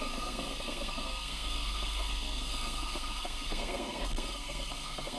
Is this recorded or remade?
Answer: remade